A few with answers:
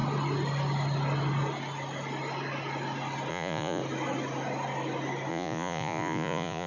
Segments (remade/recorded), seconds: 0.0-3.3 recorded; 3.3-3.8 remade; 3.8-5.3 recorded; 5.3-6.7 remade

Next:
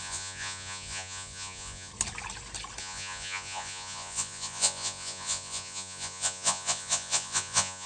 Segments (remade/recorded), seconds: 0.0-1.9 remade; 1.9-2.8 recorded; 2.8-7.9 remade

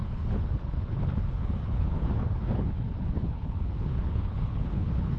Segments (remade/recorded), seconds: 0.0-5.2 remade

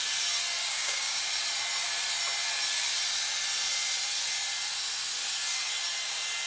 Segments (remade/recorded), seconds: 0.0-0.6 recorded; 0.6-1.2 remade; 1.2-6.5 recorded

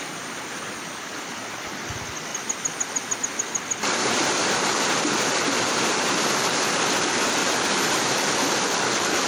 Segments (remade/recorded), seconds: 0.0-4.0 recorded; 4.0-6.6 remade; 6.6-7.4 recorded; 7.4-8.3 remade; 8.3-9.3 recorded

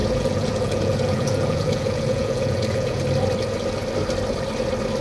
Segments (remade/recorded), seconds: 0.0-3.0 remade; 3.0-5.0 recorded

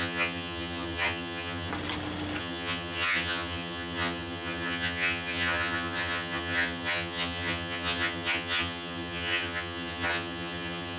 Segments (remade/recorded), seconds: 0.0-1.7 remade; 1.7-2.4 recorded; 2.4-11.0 remade

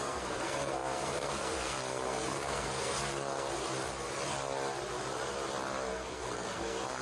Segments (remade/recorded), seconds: 0.0-3.5 remade; 3.5-5.9 recorded; 5.9-7.0 remade